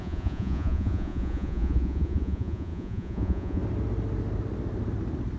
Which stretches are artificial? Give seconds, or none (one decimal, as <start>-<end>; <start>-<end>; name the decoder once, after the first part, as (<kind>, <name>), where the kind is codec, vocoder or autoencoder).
0.0-3.6 (vocoder, Vocos)